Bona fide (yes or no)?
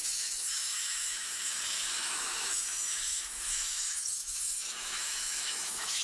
no